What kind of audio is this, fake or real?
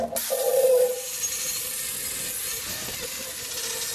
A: real